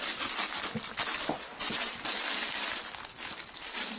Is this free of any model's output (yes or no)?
yes